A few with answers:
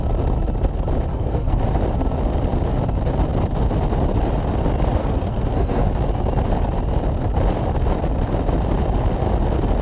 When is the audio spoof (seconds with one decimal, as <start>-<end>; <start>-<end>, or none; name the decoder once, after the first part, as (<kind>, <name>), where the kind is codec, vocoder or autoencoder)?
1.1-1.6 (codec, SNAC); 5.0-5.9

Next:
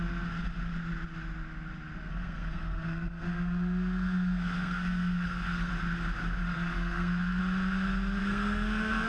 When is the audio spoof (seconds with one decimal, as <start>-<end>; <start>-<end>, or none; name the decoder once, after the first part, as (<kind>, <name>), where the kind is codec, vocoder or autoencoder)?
2.1-5.7 (codec, SNAC); 6.4-7.4; 8.2-9.1

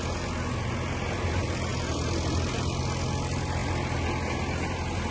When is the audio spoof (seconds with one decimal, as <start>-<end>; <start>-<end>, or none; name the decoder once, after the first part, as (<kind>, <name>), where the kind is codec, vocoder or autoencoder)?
none

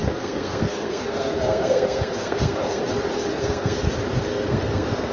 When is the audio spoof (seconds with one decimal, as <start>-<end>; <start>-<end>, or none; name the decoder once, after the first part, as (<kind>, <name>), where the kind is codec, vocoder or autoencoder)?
0.0-2.8 (codec, SNAC); 3.3-3.9; 4.3-5.1